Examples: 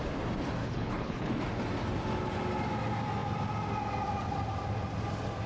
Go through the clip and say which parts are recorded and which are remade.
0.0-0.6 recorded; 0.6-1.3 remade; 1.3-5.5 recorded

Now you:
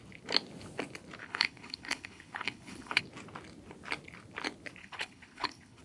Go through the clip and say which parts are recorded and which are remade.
0.0-1.2 recorded; 1.2-3.0 remade; 3.0-4.8 recorded; 4.8-5.8 remade

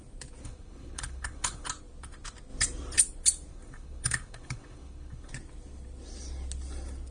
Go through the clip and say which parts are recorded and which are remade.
0.0-0.4 recorded; 0.4-1.7 remade; 1.7-3.5 recorded; 3.5-5.3 remade; 5.3-7.1 recorded

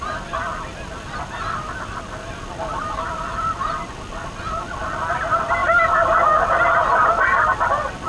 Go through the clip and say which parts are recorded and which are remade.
0.0-8.1 recorded

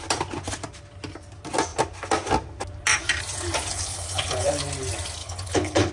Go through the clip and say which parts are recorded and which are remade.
0.0-3.7 recorded; 3.7-4.6 remade; 4.6-5.2 recorded; 5.2-5.9 remade

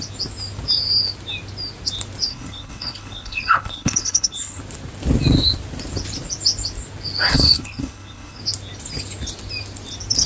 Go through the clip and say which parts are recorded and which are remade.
0.0-2.3 recorded; 2.3-4.6 remade; 4.6-7.3 recorded; 7.3-8.4 remade; 8.4-10.3 recorded